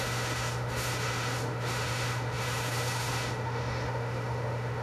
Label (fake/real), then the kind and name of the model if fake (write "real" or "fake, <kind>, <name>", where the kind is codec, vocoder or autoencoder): fake, autoencoder, DAC-VAE